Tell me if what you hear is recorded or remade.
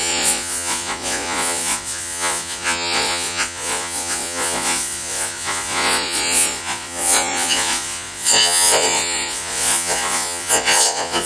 remade